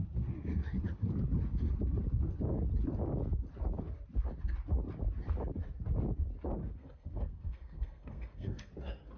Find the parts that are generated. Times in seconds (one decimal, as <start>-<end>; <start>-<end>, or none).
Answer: 6.6-8.7